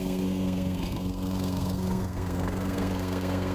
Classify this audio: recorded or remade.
remade